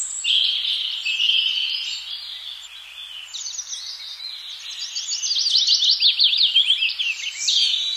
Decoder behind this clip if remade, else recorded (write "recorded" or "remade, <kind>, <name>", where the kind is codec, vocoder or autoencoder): recorded